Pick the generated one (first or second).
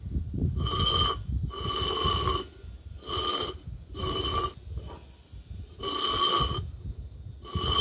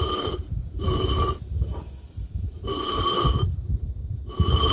second